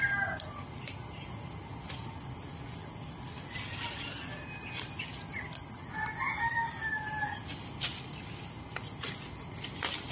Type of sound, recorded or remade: recorded